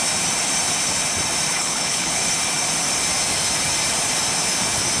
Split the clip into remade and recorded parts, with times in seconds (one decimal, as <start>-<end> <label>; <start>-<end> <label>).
0.0-1.5 recorded; 1.5-2.2 remade; 2.2-5.0 recorded